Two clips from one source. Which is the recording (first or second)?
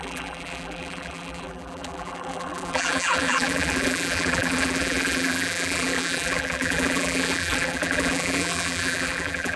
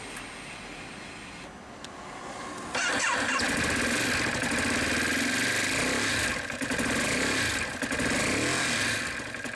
second